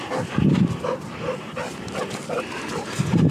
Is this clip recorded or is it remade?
recorded